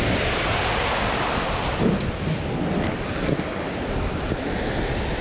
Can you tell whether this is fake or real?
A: real